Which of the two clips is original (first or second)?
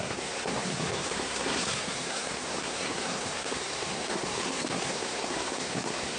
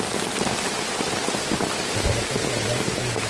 second